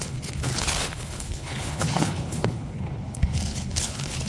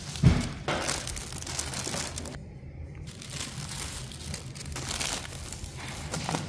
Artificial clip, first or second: first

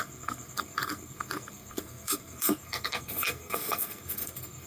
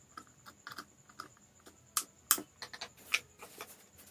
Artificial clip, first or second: first